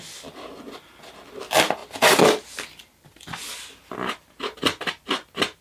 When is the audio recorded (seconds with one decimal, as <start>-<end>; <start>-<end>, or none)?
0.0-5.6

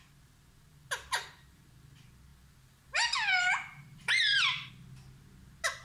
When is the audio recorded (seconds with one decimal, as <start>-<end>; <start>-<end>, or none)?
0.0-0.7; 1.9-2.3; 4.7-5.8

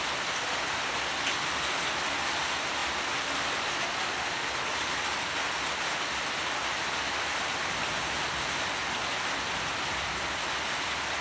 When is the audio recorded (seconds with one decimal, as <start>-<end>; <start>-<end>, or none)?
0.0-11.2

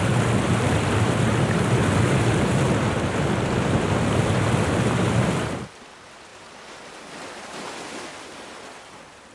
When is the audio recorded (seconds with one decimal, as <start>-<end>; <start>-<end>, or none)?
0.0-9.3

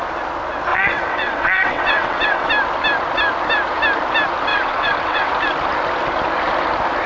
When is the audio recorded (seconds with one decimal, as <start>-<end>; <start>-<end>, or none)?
0.0-0.7; 2.5-4.5; 5.3-7.1

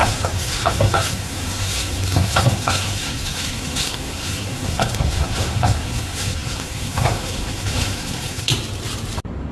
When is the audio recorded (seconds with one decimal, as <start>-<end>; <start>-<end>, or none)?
8.5-9.5